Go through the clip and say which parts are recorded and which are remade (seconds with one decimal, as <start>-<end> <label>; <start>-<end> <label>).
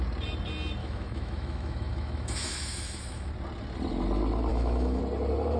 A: 0.0-0.8 recorded; 0.8-3.3 remade; 3.3-4.5 recorded; 4.5-5.0 remade; 5.0-5.6 recorded